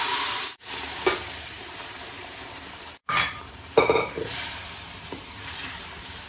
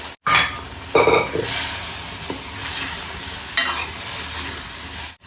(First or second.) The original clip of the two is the second